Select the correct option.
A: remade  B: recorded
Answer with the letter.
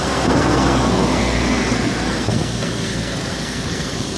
A